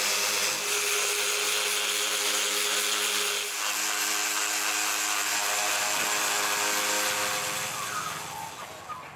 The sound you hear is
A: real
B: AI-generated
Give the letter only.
A